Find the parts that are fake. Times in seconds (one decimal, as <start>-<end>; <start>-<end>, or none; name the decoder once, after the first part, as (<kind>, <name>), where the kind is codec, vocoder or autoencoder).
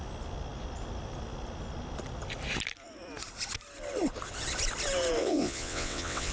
5.2-6.3 (vocoder, WaveNeXt)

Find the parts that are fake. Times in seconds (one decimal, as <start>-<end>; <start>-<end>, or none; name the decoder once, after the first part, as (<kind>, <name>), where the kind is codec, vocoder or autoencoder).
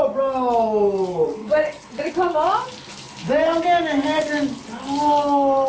1.4-2.0 (vocoder, WaveNeXt)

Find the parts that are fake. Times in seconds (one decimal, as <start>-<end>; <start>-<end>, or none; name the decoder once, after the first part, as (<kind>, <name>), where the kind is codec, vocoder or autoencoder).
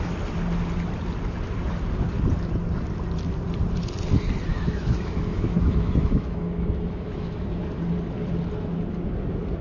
4.5-7.6 (autoencoder, DAC-VAE)